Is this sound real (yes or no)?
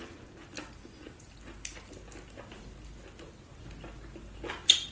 yes